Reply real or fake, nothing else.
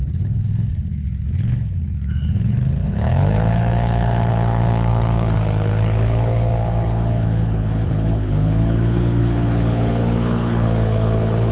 fake